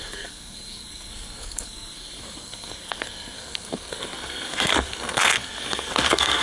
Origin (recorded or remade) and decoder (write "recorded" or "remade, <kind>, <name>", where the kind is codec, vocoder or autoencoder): remade, codec, SNAC